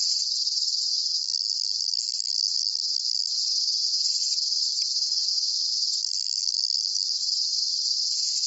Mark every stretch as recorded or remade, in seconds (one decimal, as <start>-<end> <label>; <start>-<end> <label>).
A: 0.0-1.2 recorded; 1.2-3.3 remade; 3.3-6.0 recorded; 6.0-7.1 remade; 7.1-8.5 recorded